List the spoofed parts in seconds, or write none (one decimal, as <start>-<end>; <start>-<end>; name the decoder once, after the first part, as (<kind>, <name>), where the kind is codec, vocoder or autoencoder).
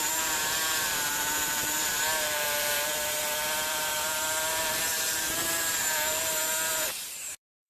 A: 0.0-3.2 (vocoder, BigVGAN v2); 3.7-7.7